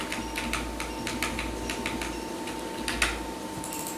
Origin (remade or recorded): recorded